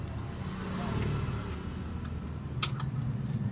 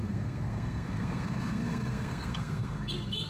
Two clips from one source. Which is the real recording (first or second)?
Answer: first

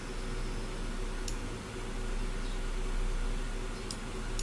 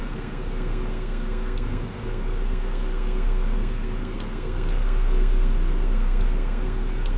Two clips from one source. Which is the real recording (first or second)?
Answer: first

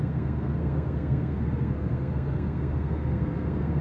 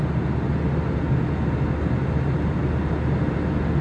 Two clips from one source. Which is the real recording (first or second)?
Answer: second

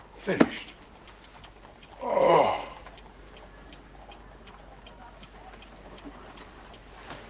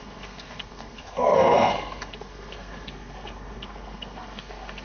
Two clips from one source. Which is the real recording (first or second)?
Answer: first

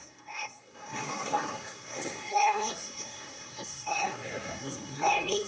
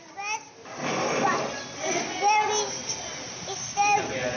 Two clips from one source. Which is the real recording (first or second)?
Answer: second